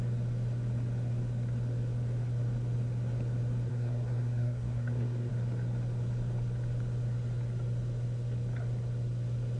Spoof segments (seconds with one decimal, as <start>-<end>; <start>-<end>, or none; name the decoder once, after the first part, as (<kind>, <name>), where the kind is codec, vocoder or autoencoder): 3.7-5.3 (codec, SNAC)

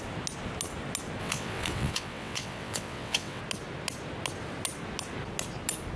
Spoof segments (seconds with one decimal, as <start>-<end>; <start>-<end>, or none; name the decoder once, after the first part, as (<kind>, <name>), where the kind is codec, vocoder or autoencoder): 1.2-3.4 (vocoder, WaveNeXt)

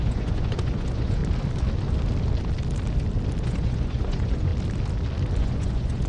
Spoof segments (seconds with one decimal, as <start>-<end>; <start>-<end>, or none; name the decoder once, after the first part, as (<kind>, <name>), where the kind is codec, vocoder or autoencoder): 0.0-1.2 (vocoder, Vocos); 3.4-4.5; 5.4-6.1

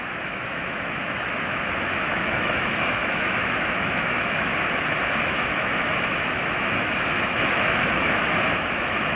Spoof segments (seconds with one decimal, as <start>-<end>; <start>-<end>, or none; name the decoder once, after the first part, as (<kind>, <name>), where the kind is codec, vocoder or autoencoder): 0.0-4.5 (autoencoder, DAC-VAE); 5.2-9.2

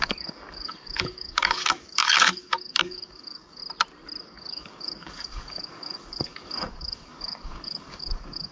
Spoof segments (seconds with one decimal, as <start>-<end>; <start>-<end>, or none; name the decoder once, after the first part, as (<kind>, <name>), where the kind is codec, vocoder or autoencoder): 0.0-3.6 (codec, DAC); 4.2-8.5

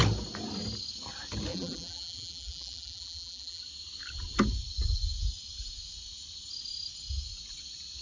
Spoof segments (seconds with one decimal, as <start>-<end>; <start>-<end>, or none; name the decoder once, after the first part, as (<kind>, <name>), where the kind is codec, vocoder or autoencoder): 1.5-3.6 (vocoder, BigVGAN v2)